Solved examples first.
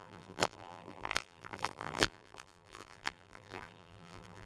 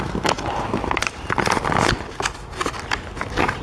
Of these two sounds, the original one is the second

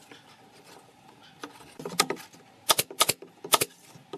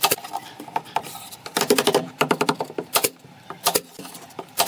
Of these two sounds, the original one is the first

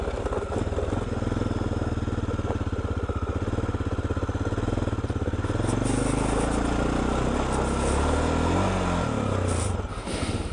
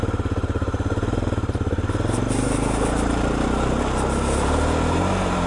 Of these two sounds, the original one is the first